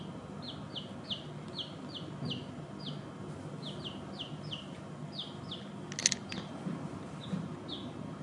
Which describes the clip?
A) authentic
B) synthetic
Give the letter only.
A